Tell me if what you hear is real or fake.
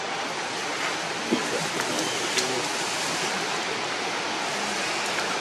real